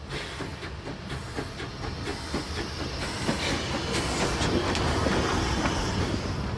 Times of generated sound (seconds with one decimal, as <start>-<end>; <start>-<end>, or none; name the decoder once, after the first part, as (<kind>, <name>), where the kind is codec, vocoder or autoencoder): none